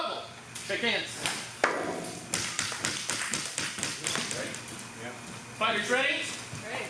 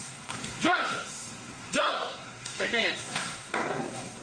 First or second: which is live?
first